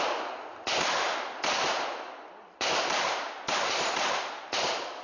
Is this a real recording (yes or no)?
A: yes